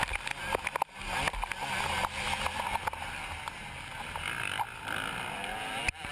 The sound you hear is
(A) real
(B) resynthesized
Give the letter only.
A